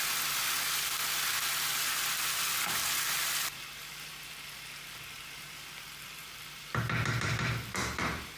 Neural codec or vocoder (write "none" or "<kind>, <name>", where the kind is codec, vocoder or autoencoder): vocoder, BigVGAN v2